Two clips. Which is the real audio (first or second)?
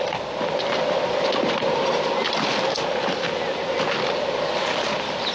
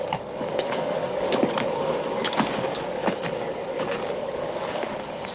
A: first